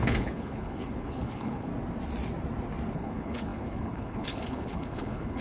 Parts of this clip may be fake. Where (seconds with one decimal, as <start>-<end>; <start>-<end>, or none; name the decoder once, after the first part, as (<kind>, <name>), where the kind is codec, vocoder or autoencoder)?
0.0-1.7 (codec, HILCodec); 2.9-5.4